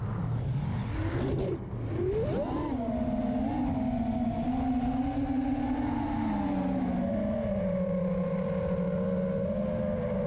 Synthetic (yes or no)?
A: no